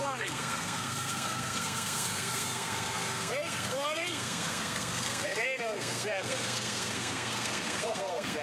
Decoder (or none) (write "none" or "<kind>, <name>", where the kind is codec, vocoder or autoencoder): codec, SNAC